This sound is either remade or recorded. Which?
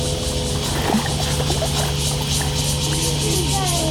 recorded